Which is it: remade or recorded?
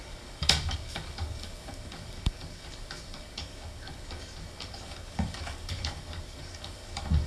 remade